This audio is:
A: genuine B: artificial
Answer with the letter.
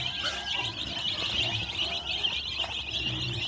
A